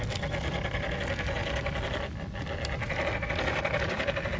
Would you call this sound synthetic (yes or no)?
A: no